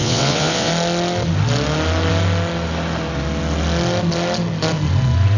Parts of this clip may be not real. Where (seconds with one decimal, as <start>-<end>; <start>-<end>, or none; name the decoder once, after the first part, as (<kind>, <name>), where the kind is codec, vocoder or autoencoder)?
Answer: 0.0-0.7 (vocoder, WaveNeXt)